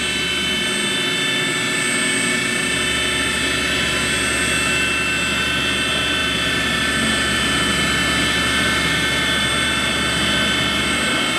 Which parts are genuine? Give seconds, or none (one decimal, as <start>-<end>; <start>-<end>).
0.0-11.4